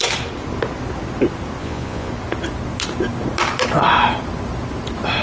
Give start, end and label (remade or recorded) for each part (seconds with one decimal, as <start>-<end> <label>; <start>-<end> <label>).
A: 0.0-1.6 recorded; 1.6-2.1 remade; 2.1-5.2 recorded